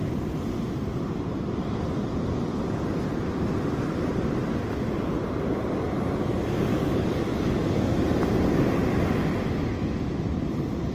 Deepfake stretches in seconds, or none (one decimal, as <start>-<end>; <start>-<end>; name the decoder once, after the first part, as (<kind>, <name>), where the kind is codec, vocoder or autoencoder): 6.7-7.7 (codec, DAC)